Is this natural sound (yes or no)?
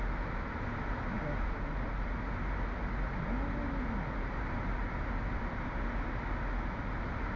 yes